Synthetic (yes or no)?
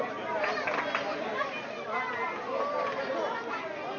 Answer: no